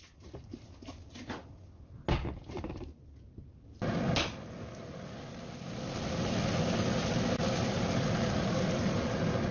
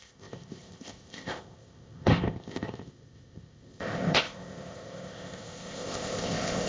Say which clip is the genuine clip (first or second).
first